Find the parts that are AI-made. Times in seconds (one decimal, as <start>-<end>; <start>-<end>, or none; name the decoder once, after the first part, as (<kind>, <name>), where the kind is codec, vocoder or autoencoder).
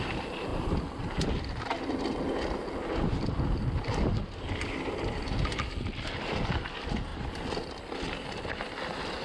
none